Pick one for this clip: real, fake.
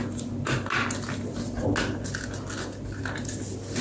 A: real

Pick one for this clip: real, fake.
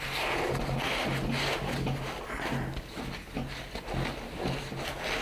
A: real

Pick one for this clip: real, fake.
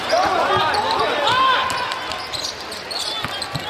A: real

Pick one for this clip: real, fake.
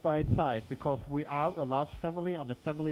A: fake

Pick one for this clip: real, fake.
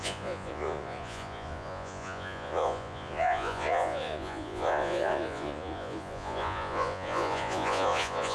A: fake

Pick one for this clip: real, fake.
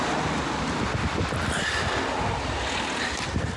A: real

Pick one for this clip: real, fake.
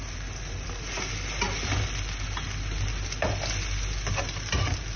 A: real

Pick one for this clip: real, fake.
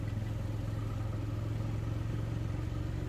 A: real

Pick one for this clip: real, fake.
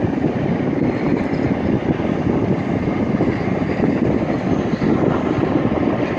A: real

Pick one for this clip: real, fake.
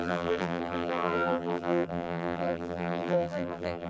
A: fake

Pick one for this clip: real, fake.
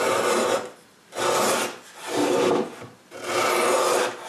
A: real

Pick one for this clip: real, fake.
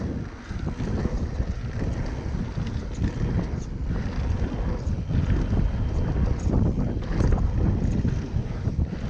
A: real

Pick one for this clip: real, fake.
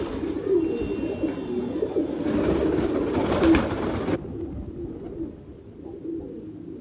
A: real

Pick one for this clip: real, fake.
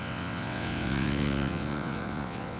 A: fake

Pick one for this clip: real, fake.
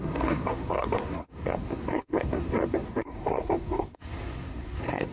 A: fake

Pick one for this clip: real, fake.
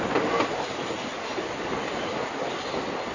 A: real